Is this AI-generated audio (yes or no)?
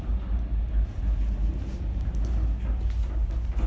no